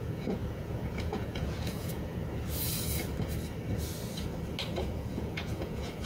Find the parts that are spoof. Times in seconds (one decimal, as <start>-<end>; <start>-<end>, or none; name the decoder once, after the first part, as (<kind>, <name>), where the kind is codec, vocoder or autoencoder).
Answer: 0.0-2.2 (vocoder, Vocos); 4.9-6.1